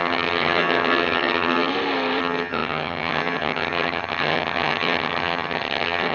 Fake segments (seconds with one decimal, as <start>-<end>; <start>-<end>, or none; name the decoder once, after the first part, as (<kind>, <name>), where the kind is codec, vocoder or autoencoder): 0.0-1.7 (vocoder, HiFi-GAN); 2.2-6.1